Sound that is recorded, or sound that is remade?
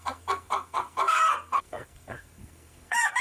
remade